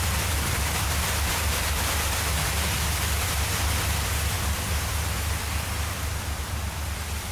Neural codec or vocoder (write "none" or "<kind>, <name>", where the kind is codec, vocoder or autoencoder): none